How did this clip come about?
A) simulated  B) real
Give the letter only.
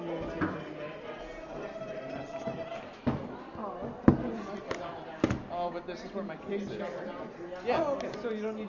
B